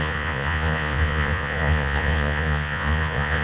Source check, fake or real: fake